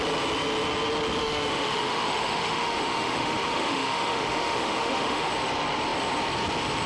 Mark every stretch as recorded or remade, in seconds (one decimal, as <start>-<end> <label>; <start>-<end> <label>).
0.0-1.2 recorded; 1.2-5.3 remade; 5.3-6.9 recorded